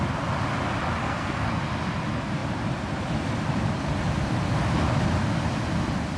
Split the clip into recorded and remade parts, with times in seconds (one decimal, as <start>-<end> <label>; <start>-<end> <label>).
0.0-1.0 recorded; 1.0-1.5 remade; 1.5-6.2 recorded